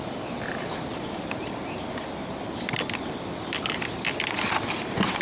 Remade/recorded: recorded